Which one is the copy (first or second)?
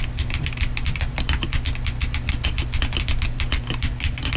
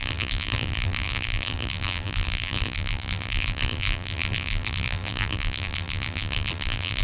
second